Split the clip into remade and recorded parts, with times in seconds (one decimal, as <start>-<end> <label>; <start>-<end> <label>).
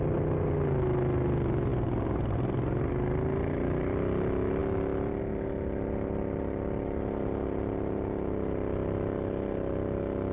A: 0.0-10.3 recorded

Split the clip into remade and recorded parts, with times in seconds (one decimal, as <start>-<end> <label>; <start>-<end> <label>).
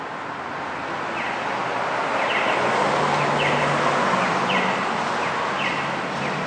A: 0.0-6.5 recorded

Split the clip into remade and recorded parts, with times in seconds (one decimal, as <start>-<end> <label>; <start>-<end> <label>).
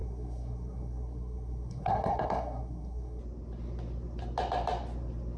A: 0.0-3.2 remade; 3.2-5.4 recorded